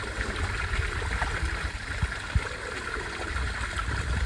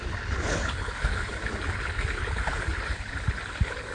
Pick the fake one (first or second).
second